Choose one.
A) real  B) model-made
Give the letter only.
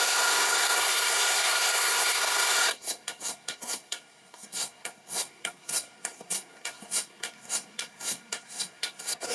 B